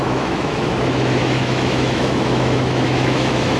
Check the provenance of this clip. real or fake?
fake